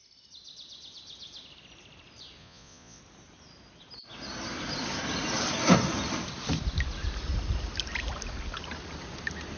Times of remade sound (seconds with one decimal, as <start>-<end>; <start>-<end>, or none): 2.4-3.0

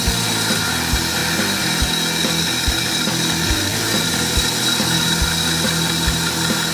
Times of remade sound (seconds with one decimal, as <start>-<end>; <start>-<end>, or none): none